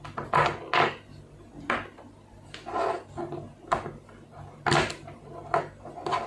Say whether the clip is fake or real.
real